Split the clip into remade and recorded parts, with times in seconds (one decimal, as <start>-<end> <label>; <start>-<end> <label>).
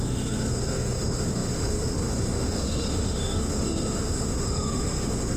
0.0-5.4 remade